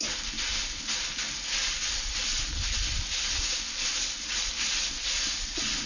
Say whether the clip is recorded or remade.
recorded